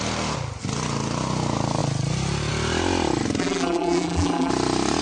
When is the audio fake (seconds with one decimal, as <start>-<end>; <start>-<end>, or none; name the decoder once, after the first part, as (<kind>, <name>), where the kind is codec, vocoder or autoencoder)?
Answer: 3.4-4.5 (vocoder, BigVGAN v2)